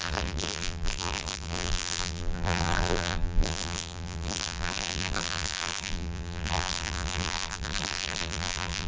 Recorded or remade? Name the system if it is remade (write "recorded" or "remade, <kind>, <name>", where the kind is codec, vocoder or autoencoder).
remade, vocoder, BigVGAN v2